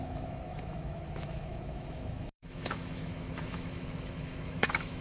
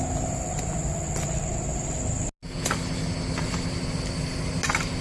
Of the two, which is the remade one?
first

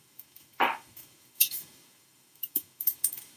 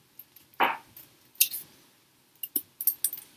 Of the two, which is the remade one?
first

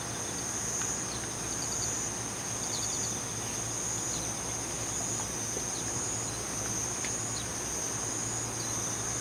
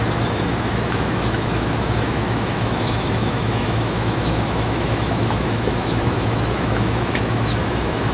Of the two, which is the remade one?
second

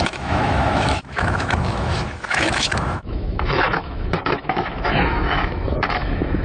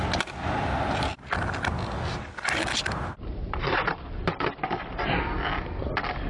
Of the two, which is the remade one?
first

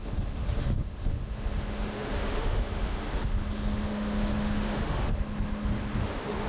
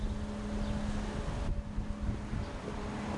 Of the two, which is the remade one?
first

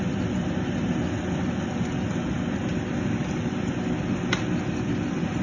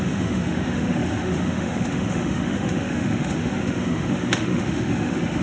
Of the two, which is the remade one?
second